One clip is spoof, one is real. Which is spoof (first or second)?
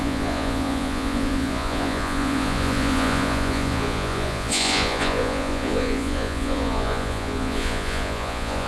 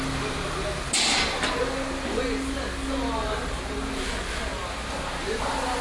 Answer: first